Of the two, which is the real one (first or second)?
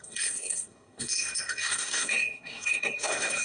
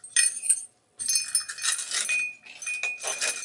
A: second